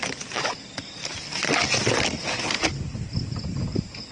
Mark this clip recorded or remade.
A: recorded